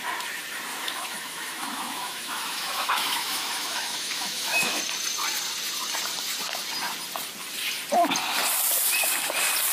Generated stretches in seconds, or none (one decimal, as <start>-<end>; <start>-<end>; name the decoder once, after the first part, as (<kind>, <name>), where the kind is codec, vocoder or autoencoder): 0.7-4.8 (autoencoder, DAC-VAE)